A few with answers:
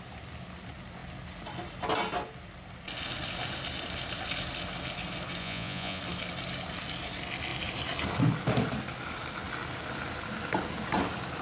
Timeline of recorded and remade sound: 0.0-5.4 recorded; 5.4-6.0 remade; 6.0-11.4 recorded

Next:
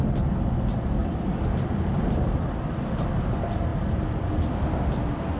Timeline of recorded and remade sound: 0.0-1.0 recorded; 1.0-3.1 remade; 3.1-3.7 recorded; 3.7-4.7 remade; 4.7-5.4 recorded

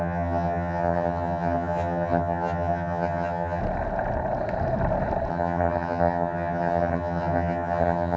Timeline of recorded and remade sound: 0.0-3.6 remade; 3.6-5.3 recorded; 5.3-8.2 remade

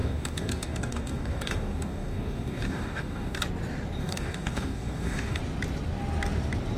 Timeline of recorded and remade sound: 0.0-3.4 remade; 3.4-4.0 recorded; 4.0-5.4 remade; 5.4-6.8 recorded

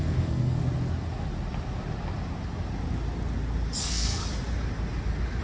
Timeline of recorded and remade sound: 0.0-0.6 remade; 0.6-3.8 recorded; 3.8-4.2 remade; 4.2-5.4 recorded